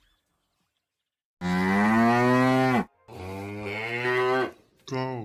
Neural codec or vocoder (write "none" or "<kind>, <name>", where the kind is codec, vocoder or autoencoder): none